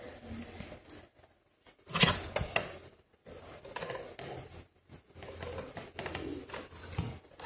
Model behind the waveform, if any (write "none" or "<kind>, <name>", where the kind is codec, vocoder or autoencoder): none